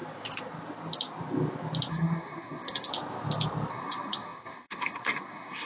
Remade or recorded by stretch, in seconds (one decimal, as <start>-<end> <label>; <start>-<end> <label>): 0.0-1.9 recorded; 1.9-2.9 remade; 2.9-3.7 recorded; 3.7-5.7 remade